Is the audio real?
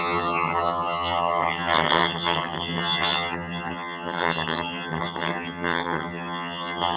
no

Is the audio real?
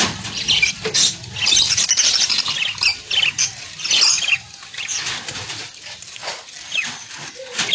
yes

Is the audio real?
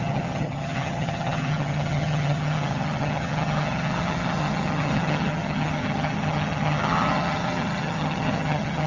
no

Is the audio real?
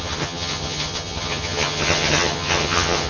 no